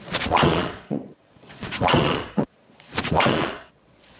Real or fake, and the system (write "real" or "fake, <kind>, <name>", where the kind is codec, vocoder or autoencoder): fake, vocoder, Vocos